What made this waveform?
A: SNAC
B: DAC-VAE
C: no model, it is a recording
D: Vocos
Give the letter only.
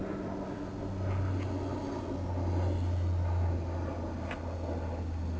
C